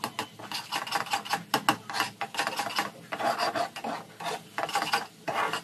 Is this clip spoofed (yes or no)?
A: no